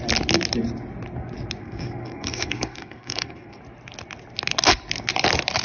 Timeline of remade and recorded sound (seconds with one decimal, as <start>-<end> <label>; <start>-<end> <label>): 0.0-1.6 recorded; 1.6-3.6 remade; 3.6-5.6 recorded